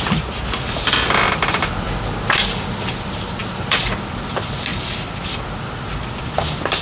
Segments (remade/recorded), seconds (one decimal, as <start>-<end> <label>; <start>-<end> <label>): 0.0-6.8 recorded